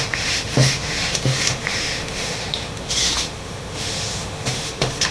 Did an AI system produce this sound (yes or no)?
yes